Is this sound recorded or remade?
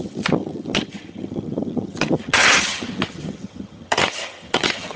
remade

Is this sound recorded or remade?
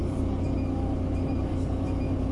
recorded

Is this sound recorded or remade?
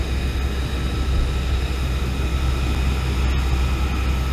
recorded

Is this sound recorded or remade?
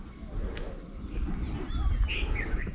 recorded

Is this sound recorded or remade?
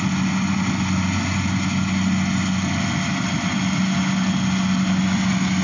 recorded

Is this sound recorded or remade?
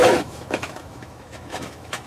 remade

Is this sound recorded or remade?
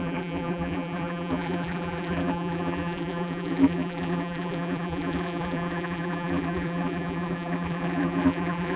remade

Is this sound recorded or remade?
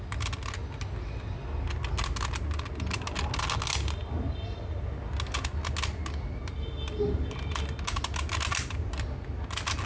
recorded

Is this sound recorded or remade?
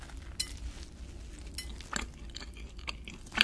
recorded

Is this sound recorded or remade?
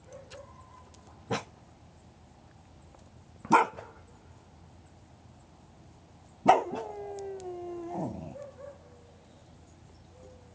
recorded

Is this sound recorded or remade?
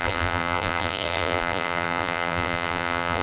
remade